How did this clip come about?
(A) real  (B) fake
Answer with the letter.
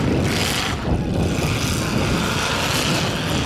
A